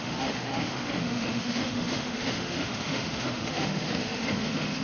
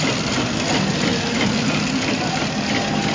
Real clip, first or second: second